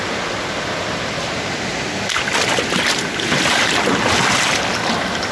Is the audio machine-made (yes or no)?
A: no